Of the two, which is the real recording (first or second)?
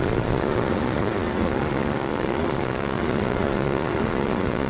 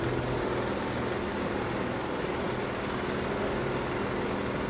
second